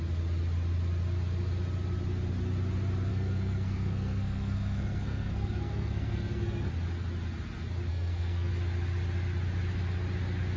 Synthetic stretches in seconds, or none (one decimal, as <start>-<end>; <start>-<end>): 3.1-6.7; 7.9-8.5